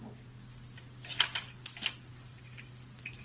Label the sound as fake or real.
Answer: real